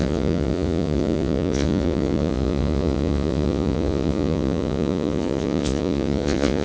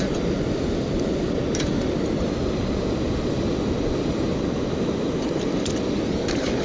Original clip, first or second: second